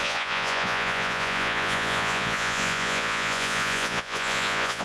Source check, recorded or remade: remade